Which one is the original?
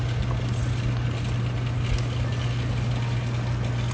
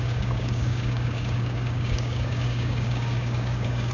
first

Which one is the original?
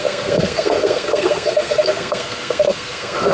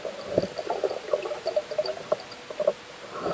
second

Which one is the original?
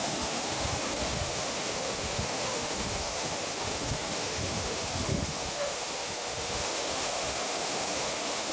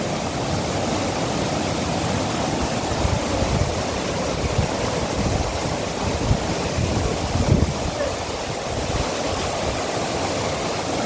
second